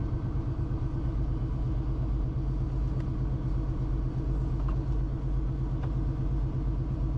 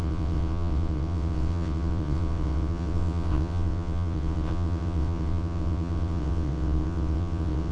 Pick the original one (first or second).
first